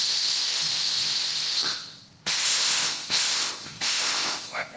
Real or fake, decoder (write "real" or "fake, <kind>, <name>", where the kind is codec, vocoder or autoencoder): fake, codec, ZipCodec